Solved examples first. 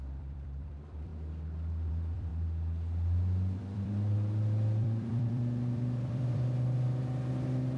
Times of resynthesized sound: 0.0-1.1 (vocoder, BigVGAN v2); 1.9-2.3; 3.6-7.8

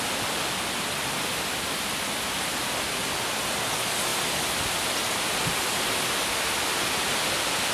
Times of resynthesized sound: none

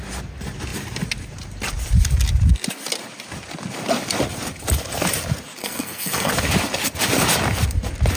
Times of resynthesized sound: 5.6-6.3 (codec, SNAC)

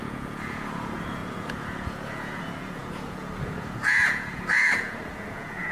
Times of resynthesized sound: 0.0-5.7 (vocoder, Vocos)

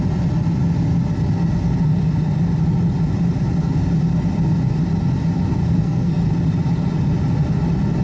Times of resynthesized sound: 5.6-6.2 (codec, SNAC)